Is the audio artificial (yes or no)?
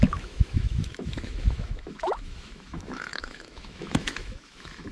yes